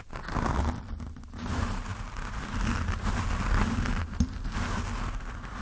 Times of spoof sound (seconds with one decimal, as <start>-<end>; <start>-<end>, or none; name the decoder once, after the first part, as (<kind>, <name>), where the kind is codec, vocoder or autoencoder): none